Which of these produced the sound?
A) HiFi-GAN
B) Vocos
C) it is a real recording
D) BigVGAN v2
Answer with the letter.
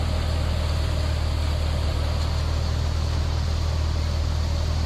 C